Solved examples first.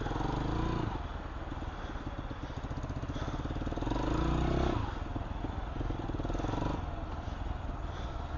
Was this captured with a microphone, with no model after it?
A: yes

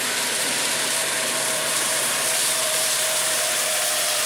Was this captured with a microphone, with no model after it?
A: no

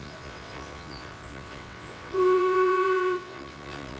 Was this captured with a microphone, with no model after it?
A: no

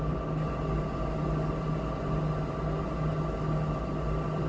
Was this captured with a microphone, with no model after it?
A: yes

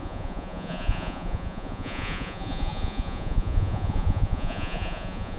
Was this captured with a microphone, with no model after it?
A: no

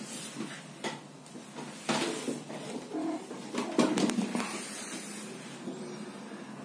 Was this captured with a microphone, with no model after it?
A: yes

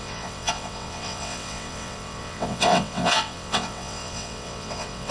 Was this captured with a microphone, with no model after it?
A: no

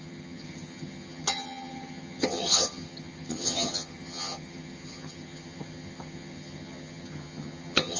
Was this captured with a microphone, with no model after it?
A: no